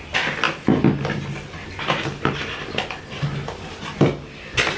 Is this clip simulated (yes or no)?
no